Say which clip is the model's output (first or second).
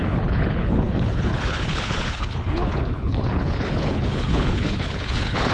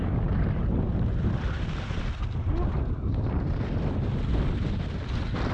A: first